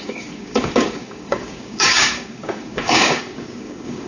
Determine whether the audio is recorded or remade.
remade